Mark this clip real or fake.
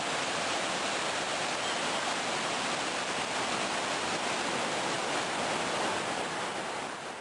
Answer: real